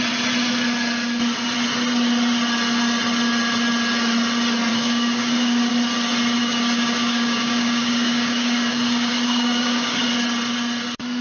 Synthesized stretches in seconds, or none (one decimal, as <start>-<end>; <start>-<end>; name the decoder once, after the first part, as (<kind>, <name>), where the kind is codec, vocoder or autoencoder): 4.7-5.7 (codec, DAC); 6.4-10.1